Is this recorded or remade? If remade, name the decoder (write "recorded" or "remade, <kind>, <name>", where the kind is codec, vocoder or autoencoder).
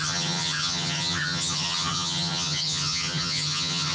remade, vocoder, HiFi-GAN